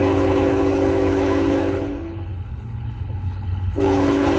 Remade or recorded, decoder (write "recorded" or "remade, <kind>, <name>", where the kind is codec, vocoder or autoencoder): remade, codec, HILCodec